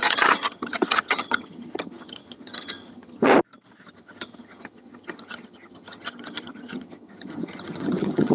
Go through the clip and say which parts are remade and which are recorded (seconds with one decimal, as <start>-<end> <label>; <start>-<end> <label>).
0.0-3.3 remade; 3.3-3.9 recorded; 3.9-8.3 remade